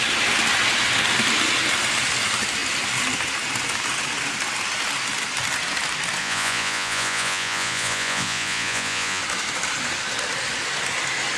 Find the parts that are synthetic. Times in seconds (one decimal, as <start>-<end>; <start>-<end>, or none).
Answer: 6.2-9.2